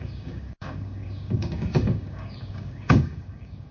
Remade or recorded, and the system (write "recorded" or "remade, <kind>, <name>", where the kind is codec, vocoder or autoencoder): remade, codec, DAC